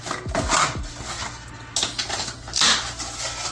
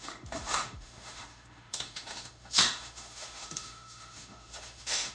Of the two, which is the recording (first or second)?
first